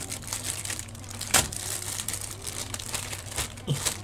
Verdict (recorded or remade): remade